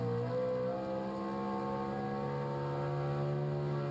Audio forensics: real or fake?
real